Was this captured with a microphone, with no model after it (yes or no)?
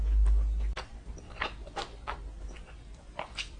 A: yes